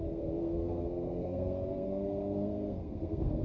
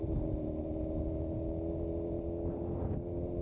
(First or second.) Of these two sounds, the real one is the second